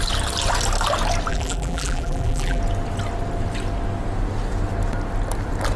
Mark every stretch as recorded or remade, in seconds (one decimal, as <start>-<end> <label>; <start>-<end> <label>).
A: 0.0-1.3 recorded; 1.3-2.6 remade; 2.6-5.8 recorded